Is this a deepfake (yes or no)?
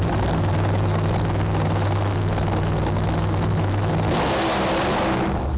no